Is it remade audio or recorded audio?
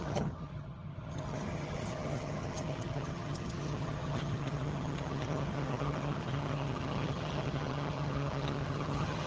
remade